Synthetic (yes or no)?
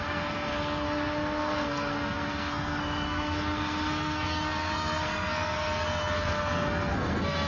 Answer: yes